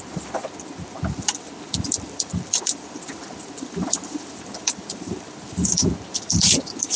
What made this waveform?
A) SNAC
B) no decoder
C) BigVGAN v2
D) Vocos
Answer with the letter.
C